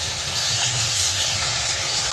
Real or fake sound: fake